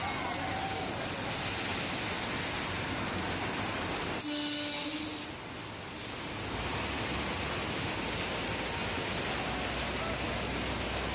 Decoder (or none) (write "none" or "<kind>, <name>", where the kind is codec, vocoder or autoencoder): none